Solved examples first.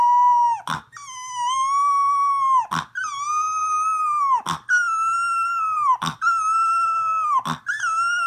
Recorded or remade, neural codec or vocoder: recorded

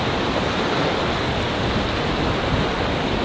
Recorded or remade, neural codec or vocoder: recorded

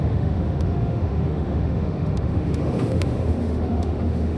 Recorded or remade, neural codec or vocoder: remade, autoencoder, DAC-VAE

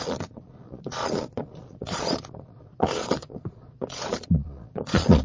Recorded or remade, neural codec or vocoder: remade, vocoder, Vocos